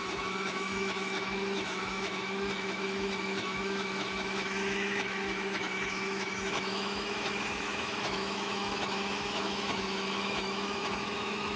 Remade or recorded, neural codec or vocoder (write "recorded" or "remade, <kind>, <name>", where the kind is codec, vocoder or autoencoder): remade, autoencoder, DAC-VAE